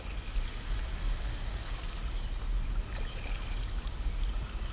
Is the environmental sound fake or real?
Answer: real